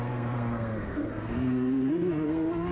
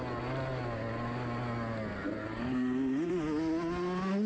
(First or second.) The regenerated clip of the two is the first